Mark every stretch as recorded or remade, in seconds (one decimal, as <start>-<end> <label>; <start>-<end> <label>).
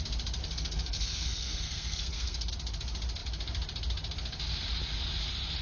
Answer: 0.0-0.4 recorded; 0.4-2.5 remade; 2.5-5.6 recorded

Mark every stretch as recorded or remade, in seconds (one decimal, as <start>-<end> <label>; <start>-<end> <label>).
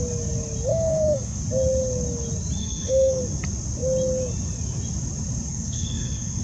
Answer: 0.0-0.7 recorded; 0.7-1.4 remade; 1.4-2.6 recorded; 2.6-3.2 remade; 3.2-5.5 recorded; 5.5-6.4 remade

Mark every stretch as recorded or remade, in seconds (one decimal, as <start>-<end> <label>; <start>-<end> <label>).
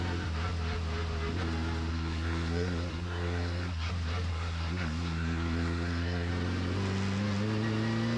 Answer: 0.0-1.9 recorded; 1.9-3.9 remade; 3.9-4.3 recorded; 4.3-6.3 remade; 6.3-8.2 recorded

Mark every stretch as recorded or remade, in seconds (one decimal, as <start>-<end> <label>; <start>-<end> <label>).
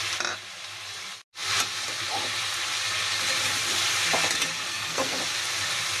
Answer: 0.0-4.7 recorded; 4.7-5.2 remade; 5.2-6.0 recorded